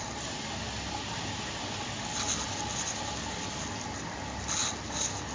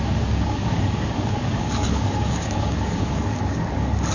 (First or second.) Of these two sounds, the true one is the first